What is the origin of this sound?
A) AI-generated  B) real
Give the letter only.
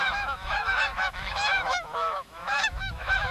A